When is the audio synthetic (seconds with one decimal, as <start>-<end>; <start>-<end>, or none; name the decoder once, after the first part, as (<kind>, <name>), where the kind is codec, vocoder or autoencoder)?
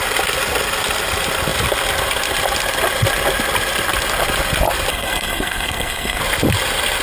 4.9-6.2 (codec, SNAC)